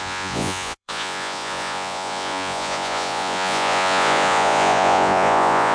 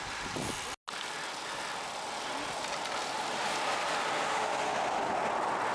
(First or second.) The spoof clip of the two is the first